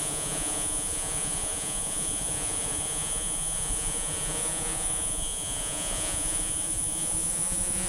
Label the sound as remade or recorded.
remade